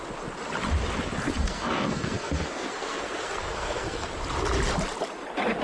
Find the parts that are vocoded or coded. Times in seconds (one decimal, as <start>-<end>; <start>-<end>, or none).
1.4-4.1